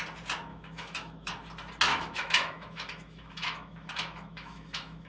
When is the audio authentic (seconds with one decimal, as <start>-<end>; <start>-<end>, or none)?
0.0-0.5; 1.3-1.9